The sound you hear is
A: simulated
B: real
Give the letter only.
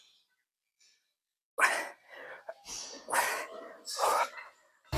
B